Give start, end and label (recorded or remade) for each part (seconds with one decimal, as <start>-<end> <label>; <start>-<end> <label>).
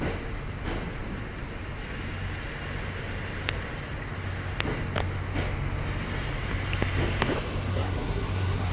0.0-7.7 recorded; 7.7-8.7 remade